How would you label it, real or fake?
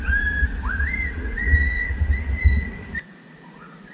fake